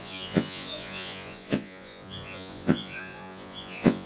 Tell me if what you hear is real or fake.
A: fake